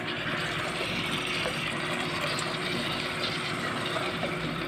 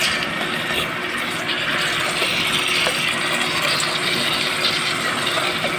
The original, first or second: second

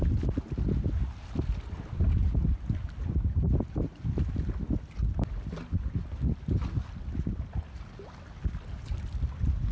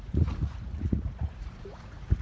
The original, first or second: first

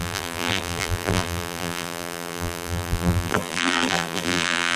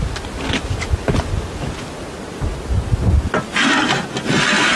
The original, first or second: second